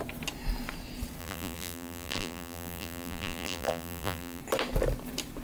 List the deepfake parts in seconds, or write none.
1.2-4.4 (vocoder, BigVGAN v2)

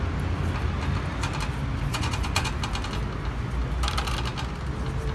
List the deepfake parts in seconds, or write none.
1.9-2.5 (vocoder, Vocos)

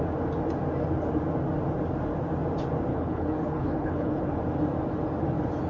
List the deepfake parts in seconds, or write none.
2.9-4.4 (codec, HILCodec)

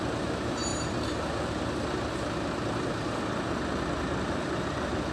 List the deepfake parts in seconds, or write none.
0.0-0.7 (vocoder, BigVGAN v2); 3.4-5.1

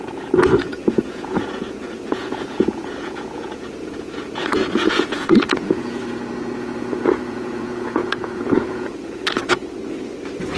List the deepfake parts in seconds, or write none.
0.0-6.0 (vocoder, Vocos); 6.6-9.6

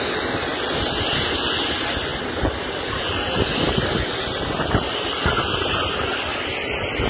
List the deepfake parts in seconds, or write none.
none

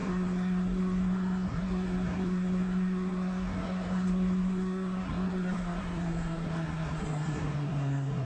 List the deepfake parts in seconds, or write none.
0.0-8.2 (codec, SNAC)

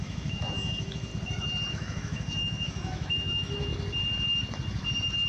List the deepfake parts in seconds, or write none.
0.0-1.1 (autoencoder, DAC-VAE); 1.7-3.7